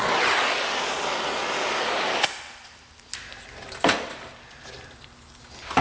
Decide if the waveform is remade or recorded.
recorded